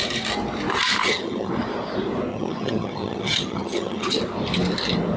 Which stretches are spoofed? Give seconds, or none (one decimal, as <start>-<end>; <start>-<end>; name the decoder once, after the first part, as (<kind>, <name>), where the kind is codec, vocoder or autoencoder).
1.0-1.5 (vocoder, HiFi-GAN); 2.3-4.2